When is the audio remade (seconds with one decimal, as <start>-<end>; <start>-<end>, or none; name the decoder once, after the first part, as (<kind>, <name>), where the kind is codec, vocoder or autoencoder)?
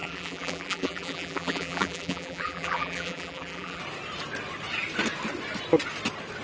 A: 0.0-3.8 (vocoder, BigVGAN v2)